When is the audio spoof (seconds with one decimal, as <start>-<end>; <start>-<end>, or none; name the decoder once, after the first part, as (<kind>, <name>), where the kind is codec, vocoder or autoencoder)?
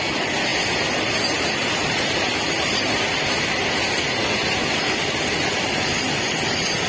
none